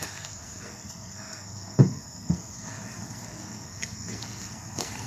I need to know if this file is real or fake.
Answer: fake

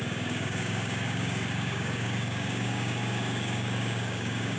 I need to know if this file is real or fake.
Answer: fake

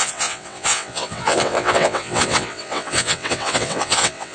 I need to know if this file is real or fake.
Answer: fake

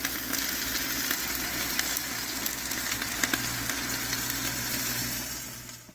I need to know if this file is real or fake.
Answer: real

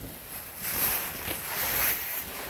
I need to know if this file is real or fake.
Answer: real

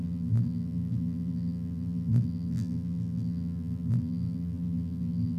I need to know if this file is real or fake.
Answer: fake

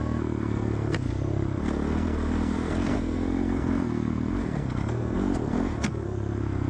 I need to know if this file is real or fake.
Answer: fake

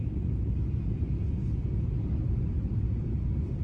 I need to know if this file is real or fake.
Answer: real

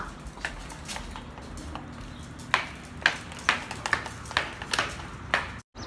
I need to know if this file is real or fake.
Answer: real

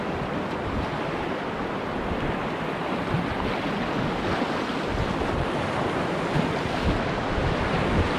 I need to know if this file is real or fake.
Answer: real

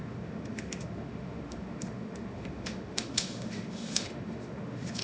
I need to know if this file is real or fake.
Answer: fake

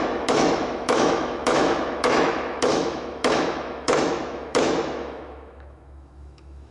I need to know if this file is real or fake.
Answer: fake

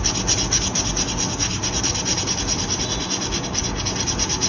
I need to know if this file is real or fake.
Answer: real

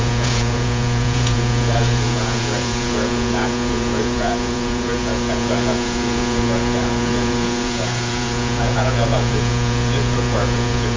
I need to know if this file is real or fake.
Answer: fake